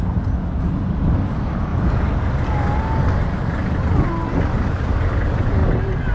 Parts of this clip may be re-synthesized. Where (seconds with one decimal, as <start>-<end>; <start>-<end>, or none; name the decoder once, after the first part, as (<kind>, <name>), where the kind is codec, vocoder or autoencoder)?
none